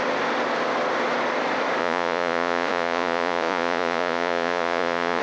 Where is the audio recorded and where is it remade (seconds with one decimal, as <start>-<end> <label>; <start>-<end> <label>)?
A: 0.0-1.8 recorded; 1.8-5.2 remade